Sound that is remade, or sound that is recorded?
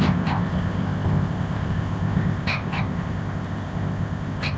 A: remade